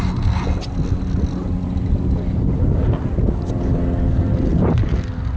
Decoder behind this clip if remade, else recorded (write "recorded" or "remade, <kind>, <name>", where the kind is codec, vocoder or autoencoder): recorded